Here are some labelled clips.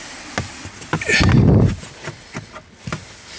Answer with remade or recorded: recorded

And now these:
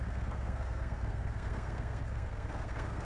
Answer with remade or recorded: remade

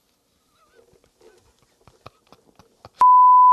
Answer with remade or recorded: recorded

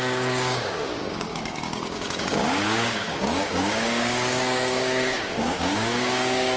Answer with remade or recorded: remade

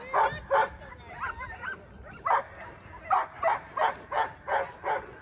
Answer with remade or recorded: recorded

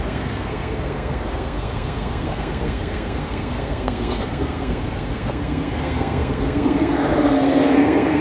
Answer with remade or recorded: remade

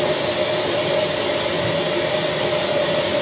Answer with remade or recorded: recorded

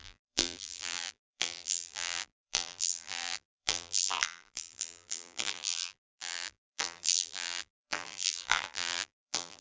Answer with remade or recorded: remade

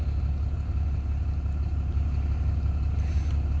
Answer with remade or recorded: recorded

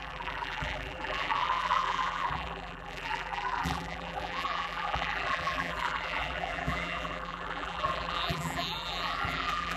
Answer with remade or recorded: remade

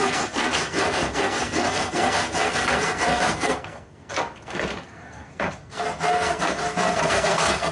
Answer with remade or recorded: remade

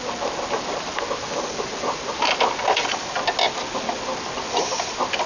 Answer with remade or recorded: recorded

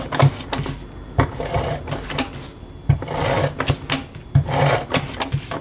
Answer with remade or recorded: recorded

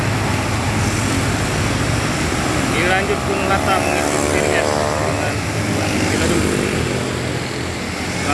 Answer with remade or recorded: recorded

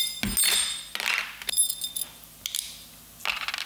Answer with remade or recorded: recorded